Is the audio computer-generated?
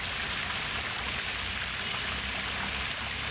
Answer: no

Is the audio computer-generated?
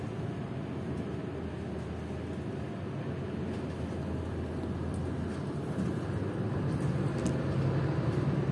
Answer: no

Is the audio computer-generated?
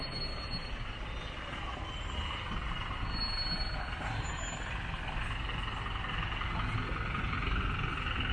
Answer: no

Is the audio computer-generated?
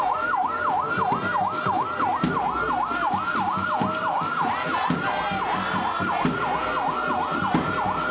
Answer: no